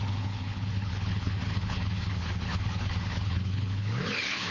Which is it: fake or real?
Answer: fake